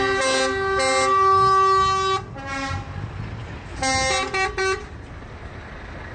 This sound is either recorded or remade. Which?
recorded